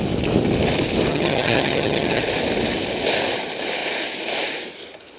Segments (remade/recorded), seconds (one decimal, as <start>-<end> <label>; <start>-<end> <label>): 0.0-1.1 recorded; 1.1-2.2 remade; 2.2-5.2 recorded